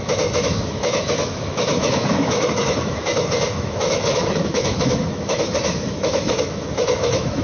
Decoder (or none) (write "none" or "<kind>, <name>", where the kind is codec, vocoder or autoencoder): autoencoder, DAC-VAE